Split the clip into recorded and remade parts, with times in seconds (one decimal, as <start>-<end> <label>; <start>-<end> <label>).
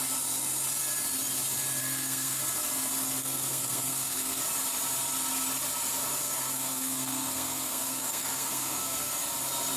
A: 0.0-1.8 recorded; 1.8-2.4 remade; 2.4-3.2 recorded; 3.2-4.4 remade; 4.4-6.2 recorded; 6.2-9.1 remade; 9.1-9.8 recorded